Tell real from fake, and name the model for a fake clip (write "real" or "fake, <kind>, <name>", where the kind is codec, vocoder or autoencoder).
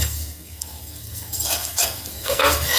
fake, codec, SNAC